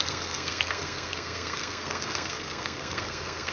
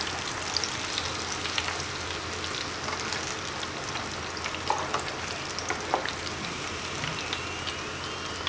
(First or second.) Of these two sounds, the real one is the second